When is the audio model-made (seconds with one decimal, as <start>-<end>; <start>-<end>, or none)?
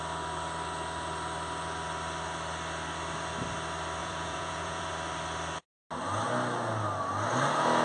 4.0-4.9